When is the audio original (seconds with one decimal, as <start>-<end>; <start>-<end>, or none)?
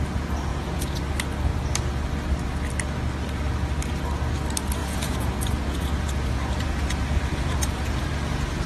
0.0-0.5; 1.0-4.8; 8.0-8.7